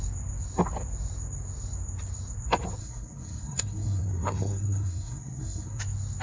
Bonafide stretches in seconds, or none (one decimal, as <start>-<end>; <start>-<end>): 0.0-2.8; 5.8-6.2